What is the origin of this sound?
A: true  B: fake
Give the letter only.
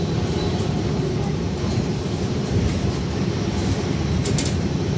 B